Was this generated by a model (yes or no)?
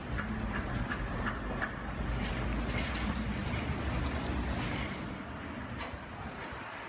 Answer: no